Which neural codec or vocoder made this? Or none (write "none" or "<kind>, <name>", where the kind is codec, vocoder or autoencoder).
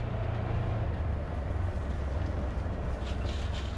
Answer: none